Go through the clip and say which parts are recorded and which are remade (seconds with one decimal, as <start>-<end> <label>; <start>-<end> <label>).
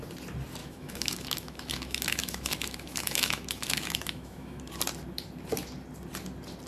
0.0-0.6 recorded; 0.6-4.6 remade; 4.6-6.7 recorded